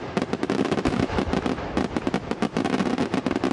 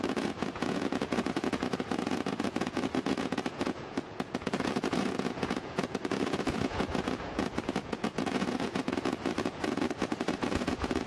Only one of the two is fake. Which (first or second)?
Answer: second